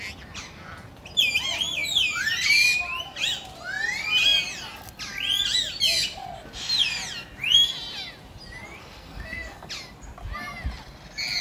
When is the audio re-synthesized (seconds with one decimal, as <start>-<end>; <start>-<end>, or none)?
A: 8.8-9.7